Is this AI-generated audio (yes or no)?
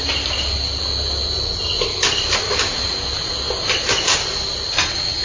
no